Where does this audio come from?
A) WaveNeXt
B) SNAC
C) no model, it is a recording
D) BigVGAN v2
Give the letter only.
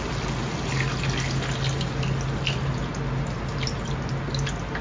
C